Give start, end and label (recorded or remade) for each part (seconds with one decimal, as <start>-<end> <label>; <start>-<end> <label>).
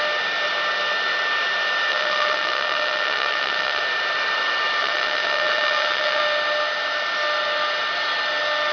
0.0-1.9 recorded; 1.9-3.8 remade; 3.8-4.8 recorded; 4.8-6.2 remade; 6.2-8.7 recorded